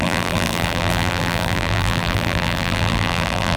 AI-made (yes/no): yes